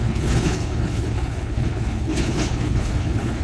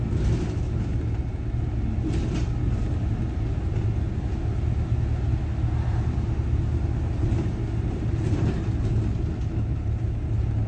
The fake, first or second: first